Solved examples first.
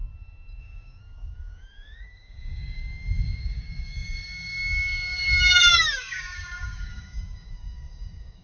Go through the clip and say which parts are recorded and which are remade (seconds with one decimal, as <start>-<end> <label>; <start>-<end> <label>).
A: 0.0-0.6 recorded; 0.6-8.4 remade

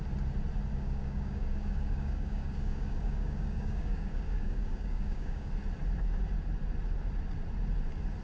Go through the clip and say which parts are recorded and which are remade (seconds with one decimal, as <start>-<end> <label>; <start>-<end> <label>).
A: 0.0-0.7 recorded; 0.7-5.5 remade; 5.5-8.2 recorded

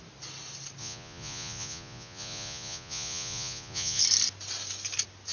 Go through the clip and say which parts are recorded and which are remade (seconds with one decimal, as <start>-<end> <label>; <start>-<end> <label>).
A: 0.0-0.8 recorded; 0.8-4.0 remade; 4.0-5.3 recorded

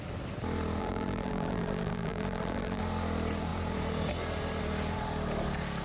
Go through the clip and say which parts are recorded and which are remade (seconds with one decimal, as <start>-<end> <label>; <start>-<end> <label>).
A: 0.0-0.8 recorded; 0.8-2.8 remade; 2.8-5.8 recorded